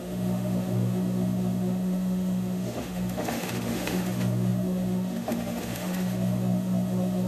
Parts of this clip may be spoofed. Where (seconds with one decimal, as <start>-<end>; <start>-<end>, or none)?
0.0-7.3